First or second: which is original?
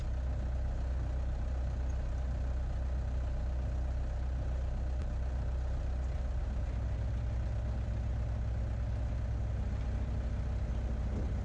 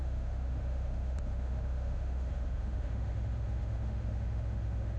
first